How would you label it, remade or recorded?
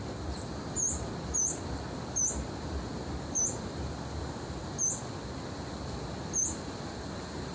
recorded